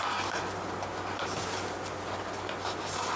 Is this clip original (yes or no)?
yes